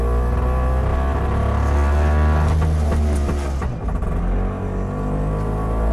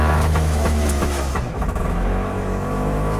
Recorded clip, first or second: first